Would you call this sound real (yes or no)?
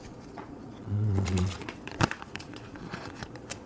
no